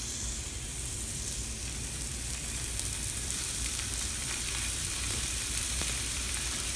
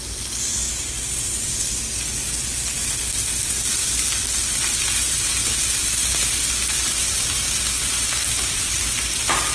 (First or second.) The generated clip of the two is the first